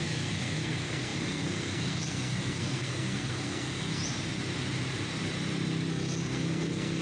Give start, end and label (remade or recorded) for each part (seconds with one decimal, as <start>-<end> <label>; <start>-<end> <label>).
0.0-4.0 remade; 4.0-5.9 recorded; 5.9-7.0 remade